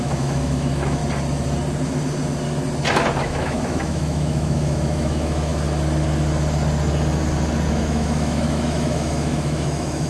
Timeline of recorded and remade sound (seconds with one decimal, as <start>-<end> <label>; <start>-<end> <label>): 0.0-1.0 remade; 1.0-3.2 recorded; 3.2-5.5 remade; 5.5-7.7 recorded; 7.7-10.1 remade